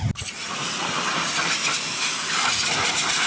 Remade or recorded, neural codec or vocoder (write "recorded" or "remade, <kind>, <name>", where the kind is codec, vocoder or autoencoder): recorded